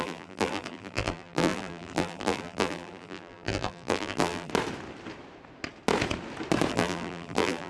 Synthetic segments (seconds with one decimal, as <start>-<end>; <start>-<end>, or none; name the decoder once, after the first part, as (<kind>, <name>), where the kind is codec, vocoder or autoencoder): 0.0-4.5 (vocoder, BigVGAN v2); 6.7-7.7